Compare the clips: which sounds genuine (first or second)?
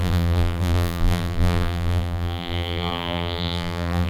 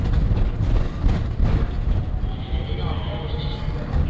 second